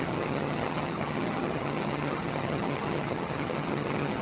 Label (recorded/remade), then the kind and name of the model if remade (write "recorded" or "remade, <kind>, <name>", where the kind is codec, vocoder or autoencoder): remade, vocoder, HiFi-GAN